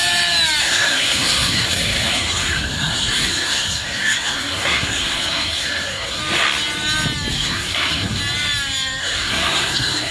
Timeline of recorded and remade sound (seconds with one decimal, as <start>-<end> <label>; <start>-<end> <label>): 0.0-0.6 recorded; 0.6-6.2 remade; 6.2-7.3 recorded; 7.3-8.2 remade; 8.2-9.0 recorded; 9.0-10.1 remade